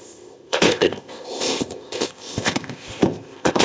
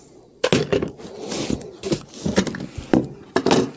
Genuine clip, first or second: second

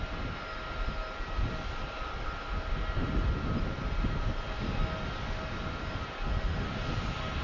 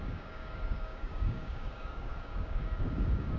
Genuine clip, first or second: first